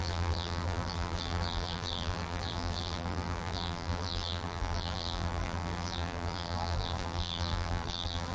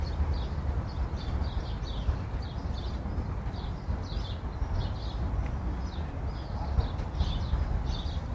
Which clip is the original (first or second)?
second